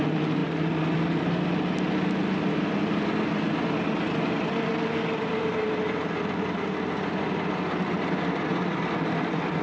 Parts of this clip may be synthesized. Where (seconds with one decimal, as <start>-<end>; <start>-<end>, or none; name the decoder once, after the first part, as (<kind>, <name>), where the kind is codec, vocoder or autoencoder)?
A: none